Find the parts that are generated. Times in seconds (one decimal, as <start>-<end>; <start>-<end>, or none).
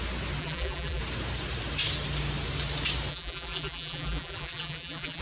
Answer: 0.4-1.0; 3.1-5.2